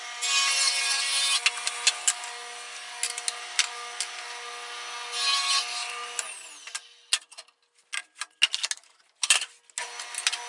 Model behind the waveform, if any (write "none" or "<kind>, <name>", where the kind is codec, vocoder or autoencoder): none